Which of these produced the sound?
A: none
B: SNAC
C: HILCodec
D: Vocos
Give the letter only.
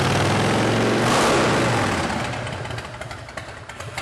A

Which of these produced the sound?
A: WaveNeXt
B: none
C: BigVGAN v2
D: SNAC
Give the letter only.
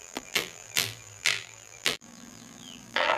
C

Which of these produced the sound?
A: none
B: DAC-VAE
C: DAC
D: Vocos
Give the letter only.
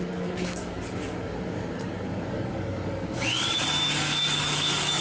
C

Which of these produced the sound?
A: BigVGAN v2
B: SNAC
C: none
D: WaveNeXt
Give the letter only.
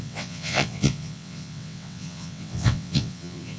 D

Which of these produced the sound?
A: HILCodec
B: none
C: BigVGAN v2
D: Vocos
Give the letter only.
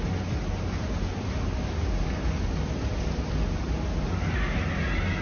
B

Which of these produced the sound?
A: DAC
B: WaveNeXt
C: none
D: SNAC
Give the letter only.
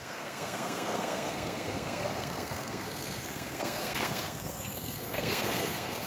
D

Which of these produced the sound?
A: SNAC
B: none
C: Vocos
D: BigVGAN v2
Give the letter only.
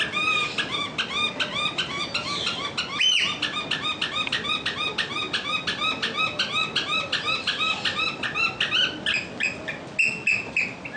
B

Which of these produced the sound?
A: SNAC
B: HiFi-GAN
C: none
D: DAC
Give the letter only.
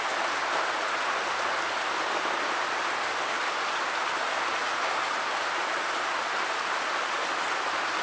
C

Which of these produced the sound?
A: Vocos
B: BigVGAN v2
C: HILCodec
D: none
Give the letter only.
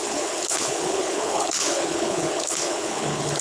C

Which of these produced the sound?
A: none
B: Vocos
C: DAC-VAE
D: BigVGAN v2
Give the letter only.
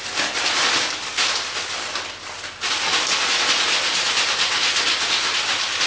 A